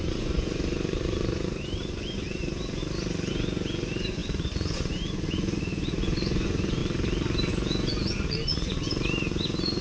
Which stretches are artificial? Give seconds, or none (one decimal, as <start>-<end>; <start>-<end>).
0.0-2.8; 3.3-6.8; 7.5-9.8